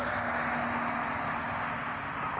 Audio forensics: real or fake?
real